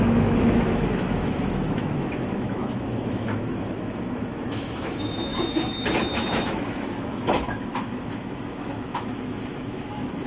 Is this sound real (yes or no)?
no